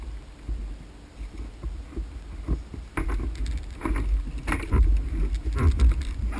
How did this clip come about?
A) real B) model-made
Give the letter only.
A